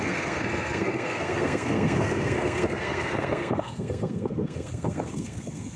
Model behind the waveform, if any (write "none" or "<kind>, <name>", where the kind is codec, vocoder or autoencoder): codec, SNAC